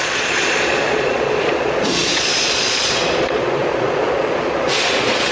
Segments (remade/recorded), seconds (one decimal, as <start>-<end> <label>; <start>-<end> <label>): 0.0-5.3 remade